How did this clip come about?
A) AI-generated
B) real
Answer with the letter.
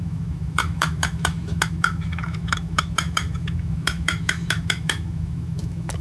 A